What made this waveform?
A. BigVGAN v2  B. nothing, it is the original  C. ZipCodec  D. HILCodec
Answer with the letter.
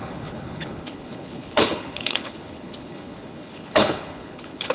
D